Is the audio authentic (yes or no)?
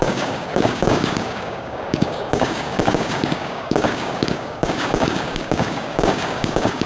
no